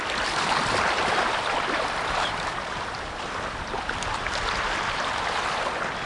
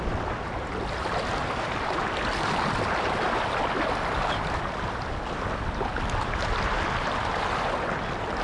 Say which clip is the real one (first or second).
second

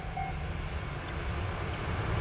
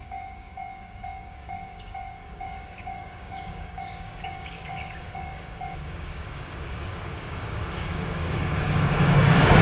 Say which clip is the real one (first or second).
first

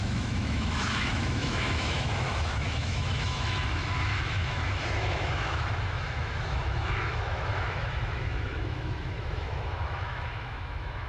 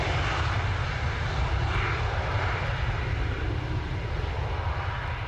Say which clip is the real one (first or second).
second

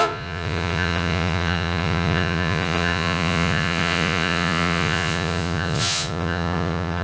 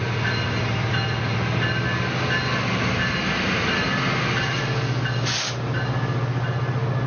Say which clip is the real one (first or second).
second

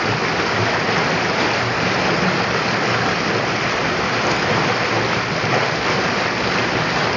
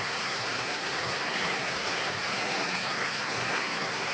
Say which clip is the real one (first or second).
first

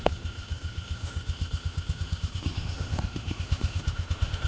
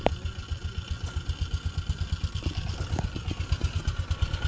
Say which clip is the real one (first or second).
second